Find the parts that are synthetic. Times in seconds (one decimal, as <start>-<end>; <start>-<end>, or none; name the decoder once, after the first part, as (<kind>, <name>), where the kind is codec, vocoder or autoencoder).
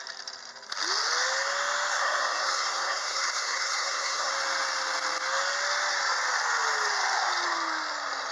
1.9-4.3 (codec, SNAC)